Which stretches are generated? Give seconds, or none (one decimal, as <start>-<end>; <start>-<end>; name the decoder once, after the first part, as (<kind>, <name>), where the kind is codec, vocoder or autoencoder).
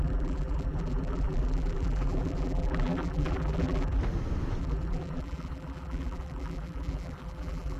0.0-4.0 (vocoder, BigVGAN v2); 4.6-7.8